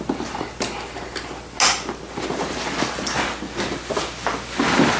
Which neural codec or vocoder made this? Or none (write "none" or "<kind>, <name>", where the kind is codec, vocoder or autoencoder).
none